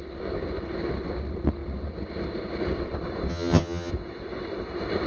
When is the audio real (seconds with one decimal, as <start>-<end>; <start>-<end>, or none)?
0.0-3.3; 3.9-5.1